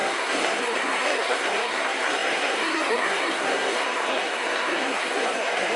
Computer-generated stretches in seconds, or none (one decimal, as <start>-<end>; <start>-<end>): 0.0-5.8